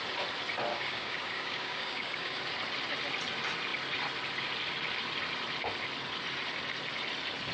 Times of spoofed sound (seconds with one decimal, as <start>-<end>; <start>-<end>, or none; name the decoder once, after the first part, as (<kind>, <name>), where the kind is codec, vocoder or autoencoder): 0.7-2.4 (codec, DAC)